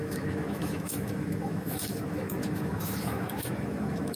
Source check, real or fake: fake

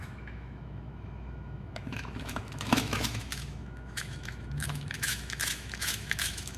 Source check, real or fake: fake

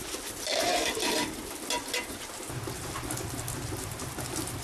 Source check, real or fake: real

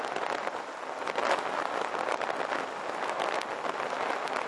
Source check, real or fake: real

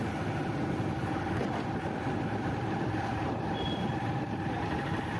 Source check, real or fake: real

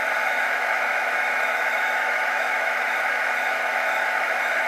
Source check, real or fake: fake